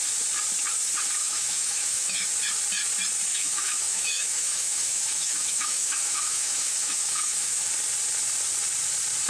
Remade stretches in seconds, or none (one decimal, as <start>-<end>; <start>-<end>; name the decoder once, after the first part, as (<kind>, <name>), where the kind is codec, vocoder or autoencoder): 1.2-2.3 (autoencoder, DAC-VAE); 3.3-7.7